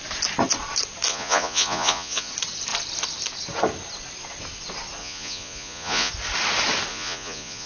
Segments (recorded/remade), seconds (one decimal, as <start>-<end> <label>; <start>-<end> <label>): 0.0-1.1 recorded; 1.1-2.3 remade; 2.3-5.0 recorded; 5.0-6.1 remade; 6.1-6.9 recorded; 6.9-7.7 remade